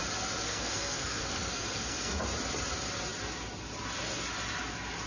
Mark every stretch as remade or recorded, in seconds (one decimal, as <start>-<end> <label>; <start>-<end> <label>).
0.0-0.4 recorded; 0.4-2.2 remade; 2.2-5.1 recorded

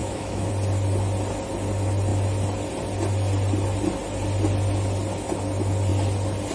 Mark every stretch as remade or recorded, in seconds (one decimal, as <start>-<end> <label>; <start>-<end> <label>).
0.0-0.5 remade; 0.5-6.5 recorded

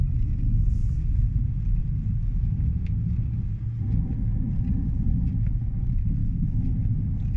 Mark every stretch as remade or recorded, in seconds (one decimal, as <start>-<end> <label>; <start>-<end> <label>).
0.0-0.8 recorded; 0.8-1.4 remade; 1.4-7.4 recorded

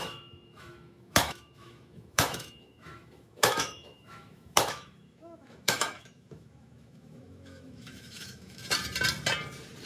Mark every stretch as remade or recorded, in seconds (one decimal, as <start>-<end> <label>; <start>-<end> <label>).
0.0-8.6 remade; 8.6-9.9 recorded

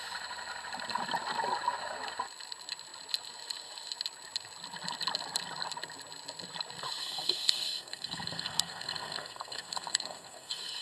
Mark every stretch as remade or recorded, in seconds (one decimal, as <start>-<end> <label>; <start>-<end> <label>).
0.0-7.0 recorded; 7.0-10.8 remade

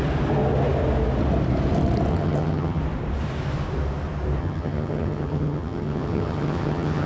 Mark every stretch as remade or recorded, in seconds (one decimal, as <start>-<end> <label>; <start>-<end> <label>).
0.0-2.1 recorded; 2.1-2.8 remade; 2.8-4.4 recorded; 4.4-7.1 remade

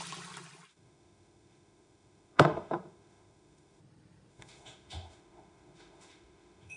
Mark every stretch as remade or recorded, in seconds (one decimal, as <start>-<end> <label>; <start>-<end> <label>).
0.0-0.7 recorded; 0.7-3.8 remade; 3.8-4.3 recorded; 4.3-6.8 remade